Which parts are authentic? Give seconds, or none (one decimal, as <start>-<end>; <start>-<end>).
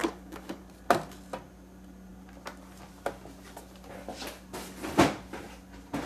0.6-6.1